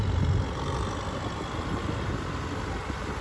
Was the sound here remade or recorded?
recorded